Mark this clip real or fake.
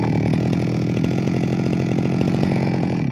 fake